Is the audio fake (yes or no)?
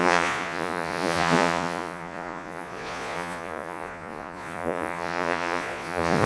yes